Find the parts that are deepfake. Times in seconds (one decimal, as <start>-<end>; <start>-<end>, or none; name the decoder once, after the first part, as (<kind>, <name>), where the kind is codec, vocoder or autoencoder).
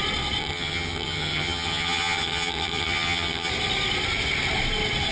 0.4-3.5 (vocoder, HiFi-GAN)